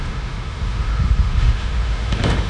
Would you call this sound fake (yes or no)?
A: yes